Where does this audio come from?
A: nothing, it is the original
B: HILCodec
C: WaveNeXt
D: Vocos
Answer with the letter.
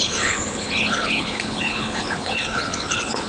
B